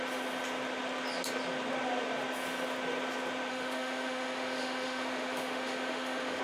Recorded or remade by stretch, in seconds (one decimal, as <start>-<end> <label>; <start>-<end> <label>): 0.0-3.5 recorded; 3.5-6.4 remade